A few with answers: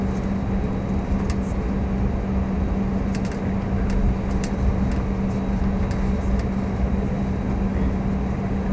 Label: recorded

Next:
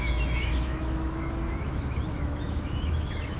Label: remade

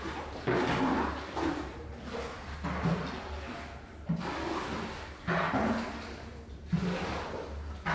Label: recorded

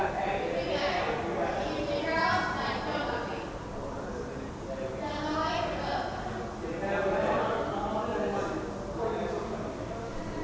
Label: recorded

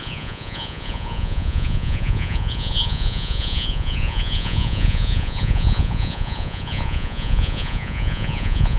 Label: remade